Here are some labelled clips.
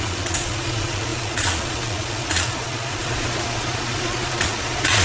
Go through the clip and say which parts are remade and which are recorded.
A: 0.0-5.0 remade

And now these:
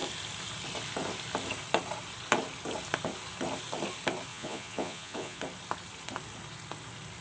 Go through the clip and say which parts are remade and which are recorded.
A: 0.0-4.3 recorded; 4.3-5.4 remade; 5.4-7.2 recorded

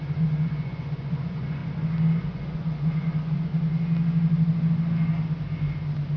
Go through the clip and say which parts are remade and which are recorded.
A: 0.0-1.6 remade; 1.6-2.2 recorded; 2.2-3.5 remade; 3.5-6.2 recorded

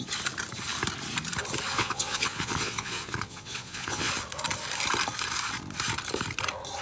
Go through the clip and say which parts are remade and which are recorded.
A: 0.0-1.7 recorded; 1.7-4.1 remade; 4.1-6.8 recorded